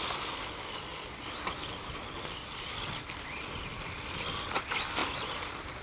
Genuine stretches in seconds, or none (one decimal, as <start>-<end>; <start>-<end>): 0.0-5.8

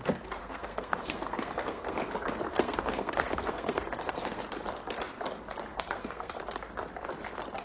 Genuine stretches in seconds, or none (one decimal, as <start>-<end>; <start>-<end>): 0.0-0.4; 2.0-2.5; 4.4-5.7; 6.3-7.6

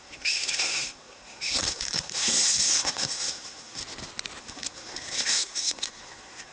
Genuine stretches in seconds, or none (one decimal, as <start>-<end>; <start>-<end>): 3.8-4.4

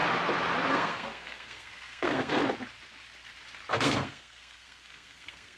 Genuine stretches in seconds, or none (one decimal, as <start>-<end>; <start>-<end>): 0.0-0.7; 2.4-3.7

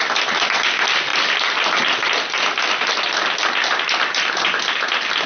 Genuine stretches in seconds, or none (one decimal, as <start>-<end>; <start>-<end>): 0.0-5.3

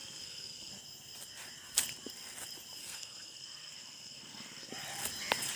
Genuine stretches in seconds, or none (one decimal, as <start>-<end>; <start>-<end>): 0.7-2.8; 4.7-5.6

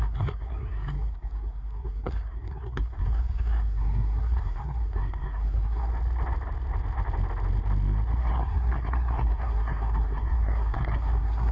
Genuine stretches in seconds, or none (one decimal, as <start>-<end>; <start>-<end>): 5.9-8.2

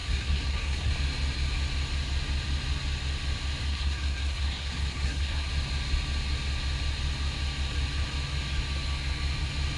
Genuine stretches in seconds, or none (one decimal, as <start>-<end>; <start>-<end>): 0.9-3.7; 5.5-9.8